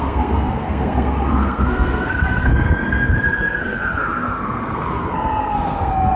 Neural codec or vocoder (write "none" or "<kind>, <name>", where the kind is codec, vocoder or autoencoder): codec, SNAC